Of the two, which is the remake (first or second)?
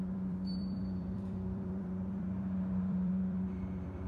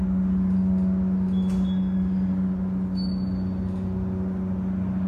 first